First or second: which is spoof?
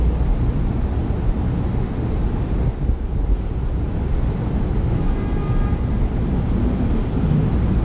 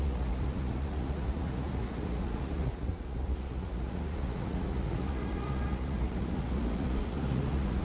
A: second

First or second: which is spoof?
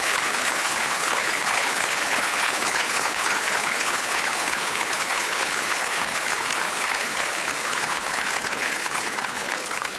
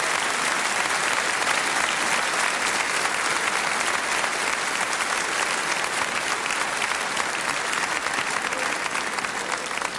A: first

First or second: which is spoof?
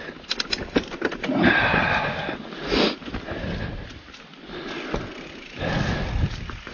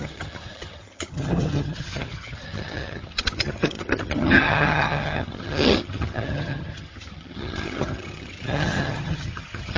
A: second